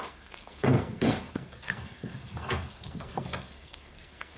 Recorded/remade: remade